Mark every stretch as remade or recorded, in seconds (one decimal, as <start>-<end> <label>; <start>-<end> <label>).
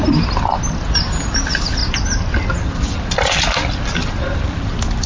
0.0-5.1 recorded